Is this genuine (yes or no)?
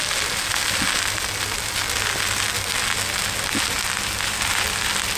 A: yes